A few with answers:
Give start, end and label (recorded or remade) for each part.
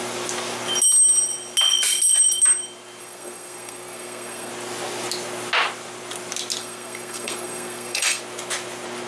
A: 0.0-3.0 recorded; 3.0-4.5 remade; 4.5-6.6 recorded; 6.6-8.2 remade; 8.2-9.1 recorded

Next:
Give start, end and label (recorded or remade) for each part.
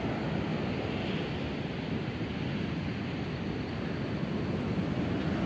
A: 0.0-5.5 recorded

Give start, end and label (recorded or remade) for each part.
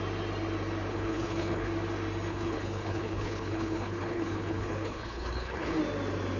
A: 0.0-0.9 recorded; 0.9-1.7 remade; 1.7-2.3 recorded; 2.3-5.8 remade; 5.8-6.4 recorded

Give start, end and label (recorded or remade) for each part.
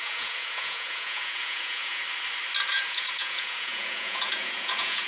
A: 0.0-2.0 remade; 2.0-2.7 recorded; 2.7-5.1 remade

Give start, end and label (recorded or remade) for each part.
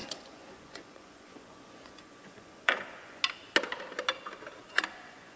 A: 0.0-3.2 remade; 3.2-4.6 recorded; 4.6-5.4 remade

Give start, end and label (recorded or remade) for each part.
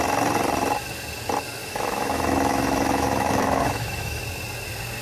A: 0.0-1.6 recorded; 1.6-4.2 remade; 4.2-5.0 recorded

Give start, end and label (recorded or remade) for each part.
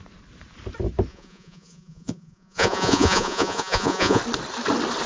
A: 0.0-1.1 recorded; 1.1-4.2 remade; 4.2-5.1 recorded